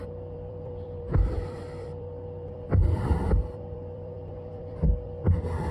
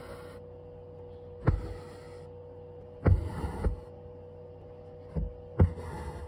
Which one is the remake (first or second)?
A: first